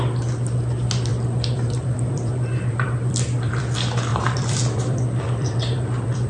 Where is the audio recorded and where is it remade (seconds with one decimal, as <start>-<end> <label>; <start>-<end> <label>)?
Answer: 0.0-1.1 recorded; 1.1-3.6 remade; 3.6-4.1 recorded; 4.1-6.3 remade